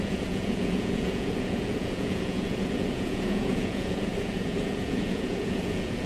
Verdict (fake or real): fake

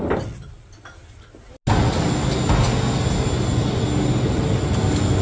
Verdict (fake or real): real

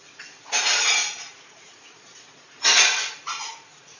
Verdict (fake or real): fake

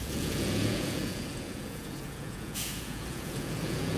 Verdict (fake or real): fake